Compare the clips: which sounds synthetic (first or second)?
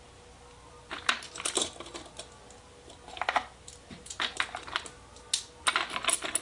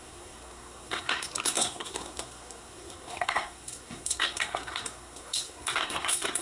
second